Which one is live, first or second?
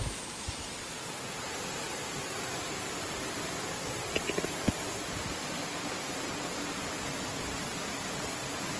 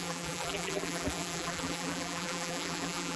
first